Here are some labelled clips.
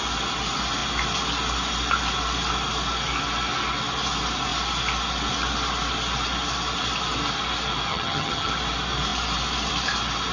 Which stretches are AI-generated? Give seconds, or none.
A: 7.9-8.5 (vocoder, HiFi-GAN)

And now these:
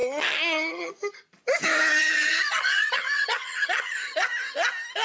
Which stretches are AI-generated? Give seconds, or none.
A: 0.0-0.9 (vocoder, HiFi-GAN); 2.0-4.1

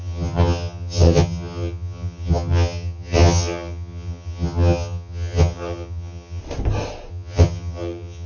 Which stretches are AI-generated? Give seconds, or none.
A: 0.0-6.4 (vocoder, HiFi-GAN); 7.1-8.3